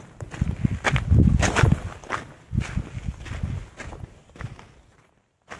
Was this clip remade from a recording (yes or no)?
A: no